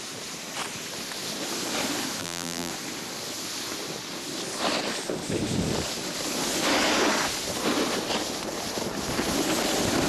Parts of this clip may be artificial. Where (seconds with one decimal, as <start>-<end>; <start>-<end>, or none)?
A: 2.2-2.7